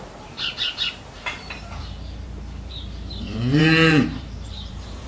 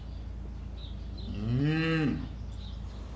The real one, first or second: second